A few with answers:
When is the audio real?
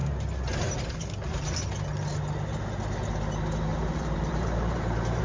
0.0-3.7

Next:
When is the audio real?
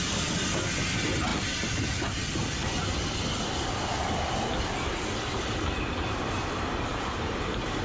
0.0-6.9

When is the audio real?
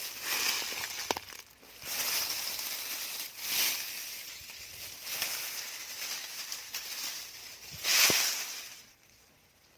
0.0-9.8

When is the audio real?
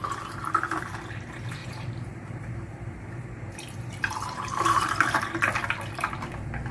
0.0-1.6; 4.9-6.7